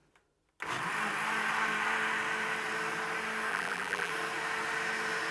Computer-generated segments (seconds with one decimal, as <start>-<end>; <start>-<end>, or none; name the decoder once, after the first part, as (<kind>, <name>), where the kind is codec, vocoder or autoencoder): 3.5-4.1 (vocoder, BigVGAN v2)